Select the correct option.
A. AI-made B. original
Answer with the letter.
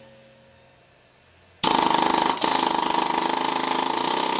B